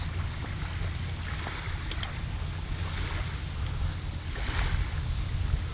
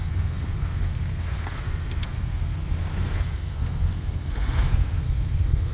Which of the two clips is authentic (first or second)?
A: first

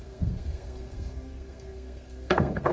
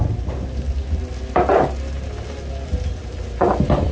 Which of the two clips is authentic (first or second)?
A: second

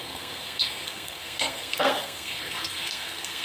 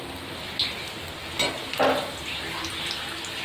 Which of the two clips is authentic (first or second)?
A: second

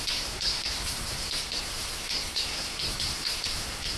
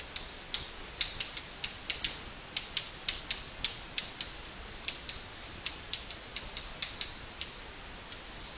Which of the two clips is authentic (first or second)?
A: second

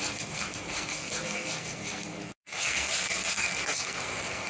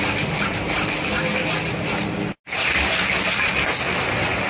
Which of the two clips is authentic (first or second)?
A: second